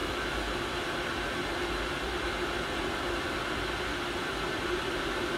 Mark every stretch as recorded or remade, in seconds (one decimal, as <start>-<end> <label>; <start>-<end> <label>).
0.0-3.2 recorded; 3.2-5.4 remade